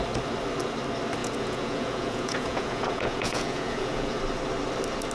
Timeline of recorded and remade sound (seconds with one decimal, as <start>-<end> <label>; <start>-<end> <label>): 0.0-1.2 recorded; 1.2-4.2 remade; 4.2-5.1 recorded